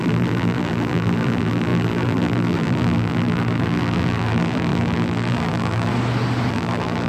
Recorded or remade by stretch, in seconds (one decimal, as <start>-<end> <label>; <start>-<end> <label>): 0.0-5.9 remade; 5.9-6.5 recorded; 6.5-7.1 remade